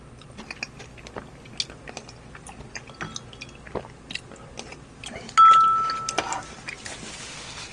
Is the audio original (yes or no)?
yes